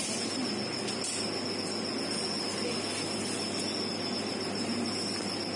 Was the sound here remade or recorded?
recorded